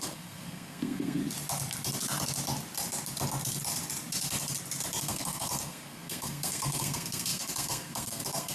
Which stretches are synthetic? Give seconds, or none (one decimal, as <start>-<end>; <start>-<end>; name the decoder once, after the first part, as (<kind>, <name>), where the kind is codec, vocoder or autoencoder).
0.0-1.2 (codec, SNAC); 5.0-8.5